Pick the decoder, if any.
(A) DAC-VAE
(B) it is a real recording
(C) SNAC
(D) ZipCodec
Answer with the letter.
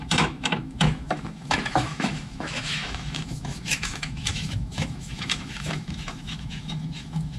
A